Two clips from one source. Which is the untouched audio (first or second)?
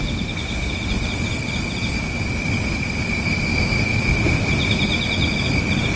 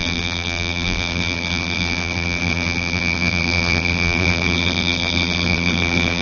first